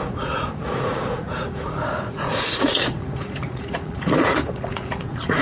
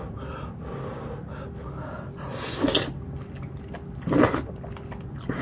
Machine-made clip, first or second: first